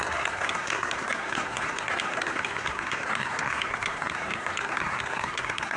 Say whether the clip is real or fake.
fake